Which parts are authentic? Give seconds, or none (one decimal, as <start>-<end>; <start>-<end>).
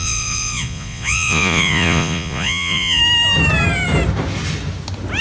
3.0-5.2